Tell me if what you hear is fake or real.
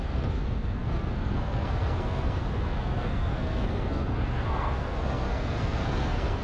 fake